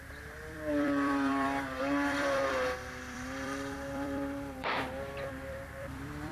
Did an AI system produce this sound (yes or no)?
yes